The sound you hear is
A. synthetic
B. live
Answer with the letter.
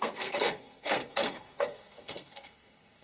A